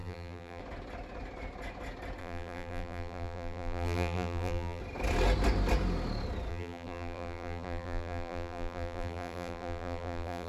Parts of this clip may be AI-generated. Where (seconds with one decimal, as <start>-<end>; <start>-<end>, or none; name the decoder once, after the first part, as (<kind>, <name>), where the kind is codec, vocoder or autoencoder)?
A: 0.0-0.6 (vocoder, BigVGAN v2); 2.2-4.8; 6.5-10.5